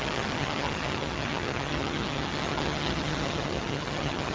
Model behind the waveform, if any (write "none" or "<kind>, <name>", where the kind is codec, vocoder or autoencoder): vocoder, HiFi-GAN